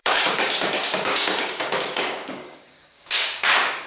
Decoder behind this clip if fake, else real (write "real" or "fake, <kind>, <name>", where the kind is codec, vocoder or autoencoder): fake, codec, DAC